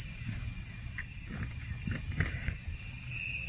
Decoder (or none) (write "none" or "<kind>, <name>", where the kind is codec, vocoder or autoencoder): none